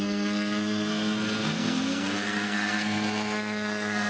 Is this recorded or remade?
remade